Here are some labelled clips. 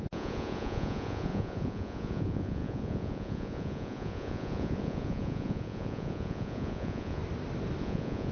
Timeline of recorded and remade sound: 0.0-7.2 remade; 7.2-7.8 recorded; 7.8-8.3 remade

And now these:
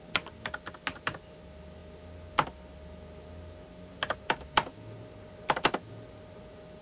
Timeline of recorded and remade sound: 0.0-6.8 recorded

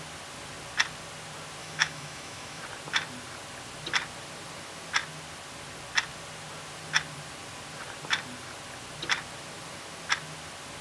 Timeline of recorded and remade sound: 0.0-1.6 recorded; 1.6-2.6 remade; 2.6-10.8 recorded

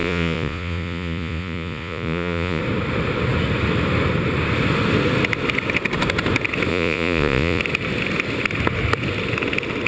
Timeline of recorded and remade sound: 0.0-2.6 remade; 2.6-6.7 recorded; 6.7-7.6 remade; 7.6-9.9 recorded

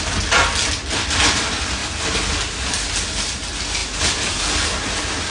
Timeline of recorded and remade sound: 0.0-5.3 recorded